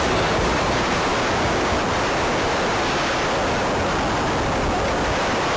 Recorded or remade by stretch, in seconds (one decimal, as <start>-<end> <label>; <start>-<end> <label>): 0.0-5.6 recorded